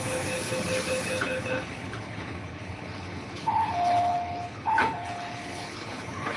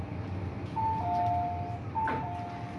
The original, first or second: second